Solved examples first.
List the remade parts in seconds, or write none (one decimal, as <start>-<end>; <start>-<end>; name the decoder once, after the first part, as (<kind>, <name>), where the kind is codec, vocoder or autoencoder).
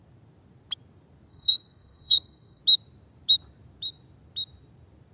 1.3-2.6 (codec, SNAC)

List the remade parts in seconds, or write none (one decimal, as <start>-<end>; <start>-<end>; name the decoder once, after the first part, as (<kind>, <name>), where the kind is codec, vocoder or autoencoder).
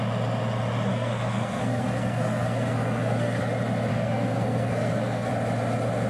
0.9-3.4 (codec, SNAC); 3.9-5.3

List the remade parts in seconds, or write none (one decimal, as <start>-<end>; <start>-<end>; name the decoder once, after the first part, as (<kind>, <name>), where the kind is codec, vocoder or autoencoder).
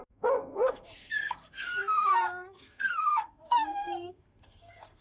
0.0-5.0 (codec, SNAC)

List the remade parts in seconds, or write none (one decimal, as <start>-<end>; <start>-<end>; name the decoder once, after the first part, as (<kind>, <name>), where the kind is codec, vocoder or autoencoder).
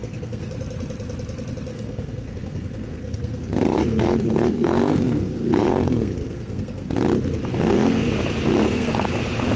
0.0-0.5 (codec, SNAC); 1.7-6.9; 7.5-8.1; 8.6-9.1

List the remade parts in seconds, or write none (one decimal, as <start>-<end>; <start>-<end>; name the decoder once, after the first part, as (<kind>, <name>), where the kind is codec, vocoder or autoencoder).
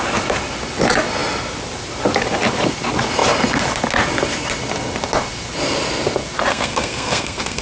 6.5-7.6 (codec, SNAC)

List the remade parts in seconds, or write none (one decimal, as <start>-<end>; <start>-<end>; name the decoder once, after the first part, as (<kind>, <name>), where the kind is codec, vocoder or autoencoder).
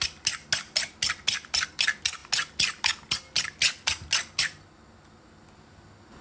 none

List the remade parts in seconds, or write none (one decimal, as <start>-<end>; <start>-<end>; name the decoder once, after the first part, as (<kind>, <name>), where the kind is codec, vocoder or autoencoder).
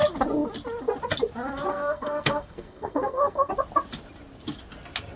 1.7-3.5 (codec, SNAC)